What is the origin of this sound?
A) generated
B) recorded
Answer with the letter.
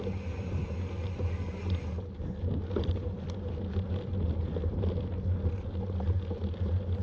B